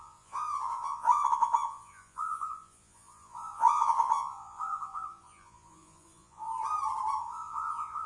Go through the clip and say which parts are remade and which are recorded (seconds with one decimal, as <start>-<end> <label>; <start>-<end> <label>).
0.0-6.5 remade; 6.5-7.2 recorded; 7.2-8.1 remade

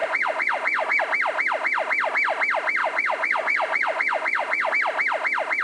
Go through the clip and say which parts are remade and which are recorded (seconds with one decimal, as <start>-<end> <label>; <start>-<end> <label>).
0.0-1.0 remade; 1.0-2.8 recorded; 2.8-4.7 remade; 4.7-5.6 recorded

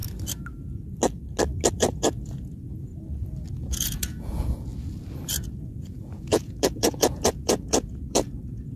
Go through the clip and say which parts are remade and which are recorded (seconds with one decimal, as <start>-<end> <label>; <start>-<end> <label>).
0.0-1.7 recorded; 1.7-2.9 remade; 2.9-3.5 recorded; 3.5-4.7 remade; 4.7-5.6 recorded; 5.6-8.8 remade

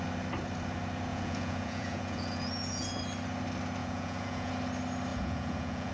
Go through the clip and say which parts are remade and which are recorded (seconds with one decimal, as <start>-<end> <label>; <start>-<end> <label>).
0.0-1.1 recorded; 1.1-3.0 remade; 3.0-3.8 recorded; 3.8-4.5 remade; 4.5-5.1 recorded; 5.1-5.9 remade

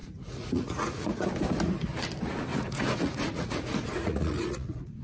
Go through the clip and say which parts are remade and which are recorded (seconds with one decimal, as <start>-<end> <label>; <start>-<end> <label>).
0.0-1.3 remade; 1.3-2.5 recorded; 2.5-5.0 remade

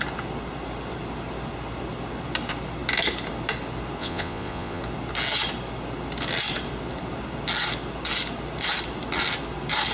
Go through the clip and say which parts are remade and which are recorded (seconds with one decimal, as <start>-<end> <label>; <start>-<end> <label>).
0.0-4.0 recorded; 4.0-4.8 remade; 4.8-9.9 recorded